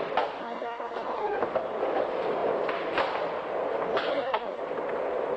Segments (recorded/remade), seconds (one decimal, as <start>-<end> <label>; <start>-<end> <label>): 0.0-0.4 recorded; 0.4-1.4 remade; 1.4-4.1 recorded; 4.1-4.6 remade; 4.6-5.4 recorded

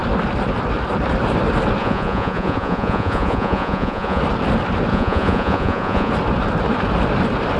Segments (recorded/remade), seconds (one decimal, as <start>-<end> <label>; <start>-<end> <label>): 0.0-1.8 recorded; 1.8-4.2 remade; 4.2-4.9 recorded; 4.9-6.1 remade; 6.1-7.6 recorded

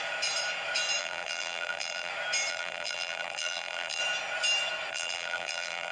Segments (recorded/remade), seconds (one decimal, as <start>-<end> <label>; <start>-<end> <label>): 0.0-1.0 recorded; 1.0-2.1 remade; 2.1-2.5 recorded; 2.5-4.0 remade; 4.0-4.9 recorded; 4.9-5.9 remade